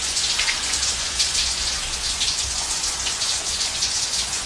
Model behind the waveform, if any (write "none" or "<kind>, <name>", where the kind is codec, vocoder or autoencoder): vocoder, Vocos